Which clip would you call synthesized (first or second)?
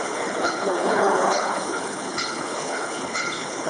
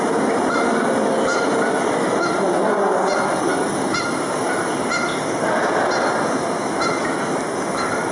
first